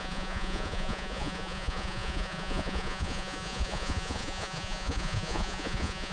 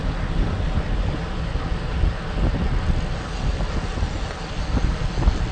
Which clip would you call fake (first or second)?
first